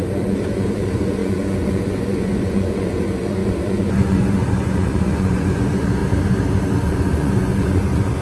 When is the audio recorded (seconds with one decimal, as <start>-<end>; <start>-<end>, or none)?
6.0-6.8